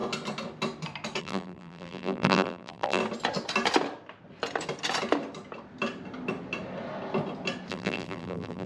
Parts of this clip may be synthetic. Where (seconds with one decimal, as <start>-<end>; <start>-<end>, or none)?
1.2-3.0; 7.7-8.7